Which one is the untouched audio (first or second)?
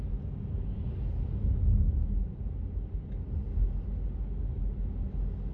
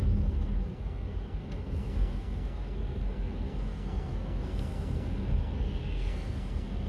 first